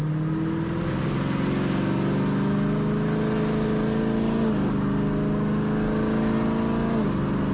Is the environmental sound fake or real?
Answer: real